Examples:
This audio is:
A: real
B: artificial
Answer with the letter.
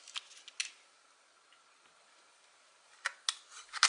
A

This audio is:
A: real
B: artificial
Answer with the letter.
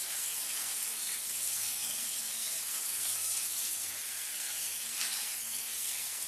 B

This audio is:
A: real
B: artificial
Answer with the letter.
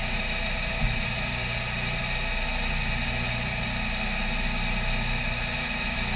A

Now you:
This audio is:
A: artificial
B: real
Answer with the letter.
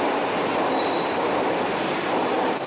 B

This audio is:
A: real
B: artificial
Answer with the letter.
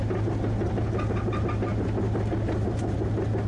A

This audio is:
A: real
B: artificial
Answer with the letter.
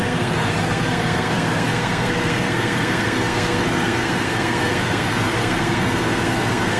B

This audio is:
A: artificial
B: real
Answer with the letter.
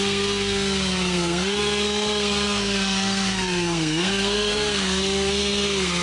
A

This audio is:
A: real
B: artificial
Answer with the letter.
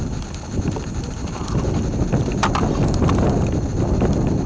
A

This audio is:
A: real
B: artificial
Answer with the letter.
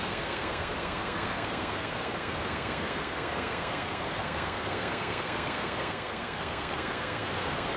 B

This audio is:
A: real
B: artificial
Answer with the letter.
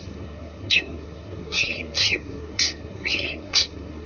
B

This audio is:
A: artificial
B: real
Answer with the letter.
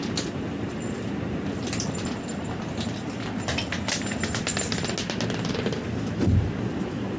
B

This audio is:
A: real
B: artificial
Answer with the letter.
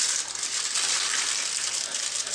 A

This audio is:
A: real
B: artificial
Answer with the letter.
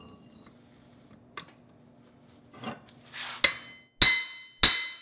A